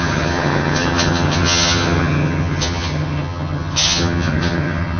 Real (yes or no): no